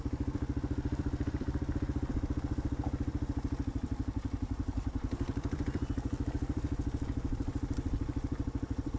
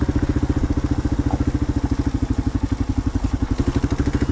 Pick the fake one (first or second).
first